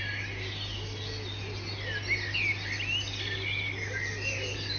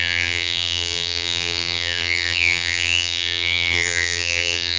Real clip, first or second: first